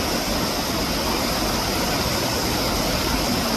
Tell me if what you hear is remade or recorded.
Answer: recorded